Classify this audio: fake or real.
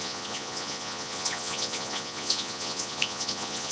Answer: fake